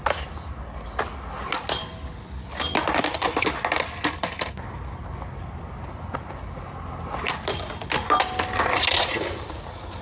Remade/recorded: recorded